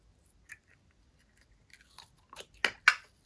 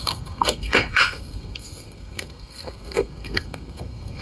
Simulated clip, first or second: second